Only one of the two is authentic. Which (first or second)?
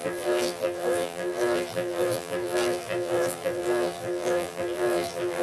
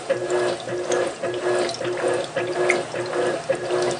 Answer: second